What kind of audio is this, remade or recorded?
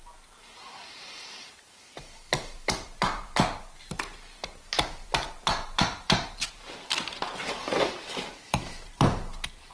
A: remade